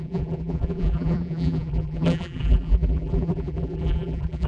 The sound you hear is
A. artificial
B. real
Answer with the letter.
A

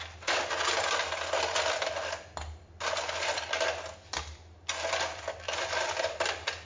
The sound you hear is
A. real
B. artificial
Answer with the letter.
A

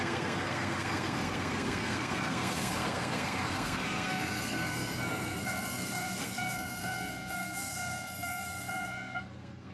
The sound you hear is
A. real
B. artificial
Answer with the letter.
B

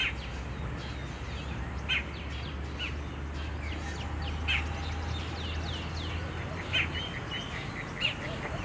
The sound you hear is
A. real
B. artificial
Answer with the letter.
A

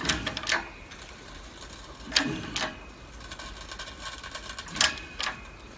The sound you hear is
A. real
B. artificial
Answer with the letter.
A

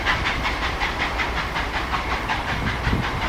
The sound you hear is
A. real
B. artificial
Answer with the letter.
B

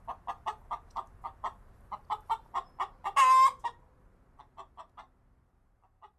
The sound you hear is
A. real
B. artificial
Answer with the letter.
A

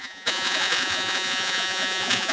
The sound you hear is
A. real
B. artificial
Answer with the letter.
B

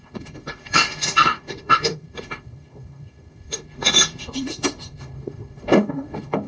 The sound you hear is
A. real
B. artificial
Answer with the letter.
B